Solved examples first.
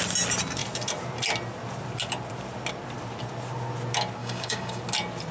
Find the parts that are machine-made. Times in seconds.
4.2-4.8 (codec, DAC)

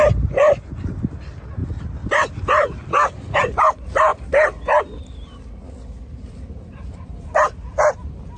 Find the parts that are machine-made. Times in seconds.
none